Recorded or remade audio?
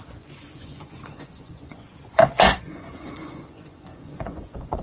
remade